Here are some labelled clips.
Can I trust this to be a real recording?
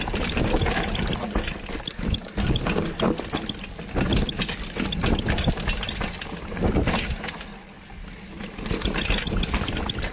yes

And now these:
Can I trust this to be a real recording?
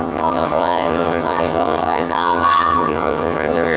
no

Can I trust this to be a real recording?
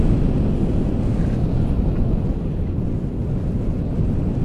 yes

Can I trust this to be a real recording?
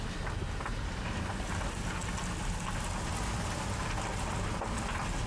yes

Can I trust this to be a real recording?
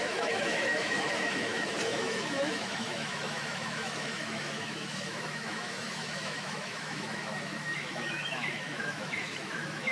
no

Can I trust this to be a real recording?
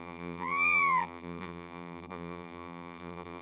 no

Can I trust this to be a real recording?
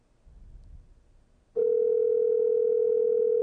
yes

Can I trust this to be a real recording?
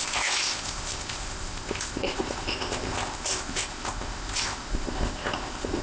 no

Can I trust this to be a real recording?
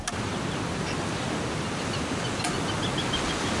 yes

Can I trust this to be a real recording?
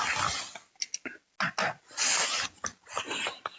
yes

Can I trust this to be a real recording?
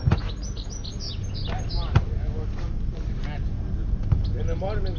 yes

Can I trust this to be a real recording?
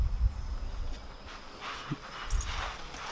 yes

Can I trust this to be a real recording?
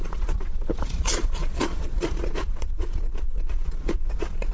no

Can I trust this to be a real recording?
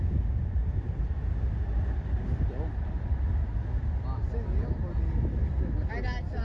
no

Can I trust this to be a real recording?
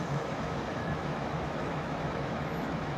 no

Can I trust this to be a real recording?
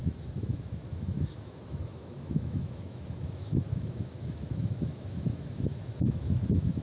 no